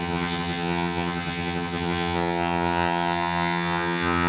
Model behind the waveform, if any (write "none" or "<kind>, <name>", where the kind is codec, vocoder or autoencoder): vocoder, HiFi-GAN